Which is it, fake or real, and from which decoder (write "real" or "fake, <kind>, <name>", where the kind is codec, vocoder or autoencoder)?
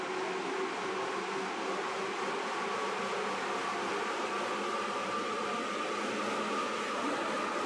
real